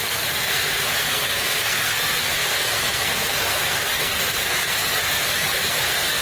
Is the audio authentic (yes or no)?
no